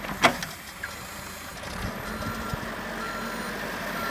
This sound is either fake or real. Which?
real